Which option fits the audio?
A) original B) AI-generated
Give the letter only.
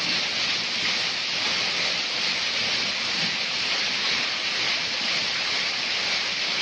A